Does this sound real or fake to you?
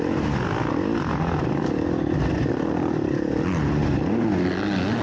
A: real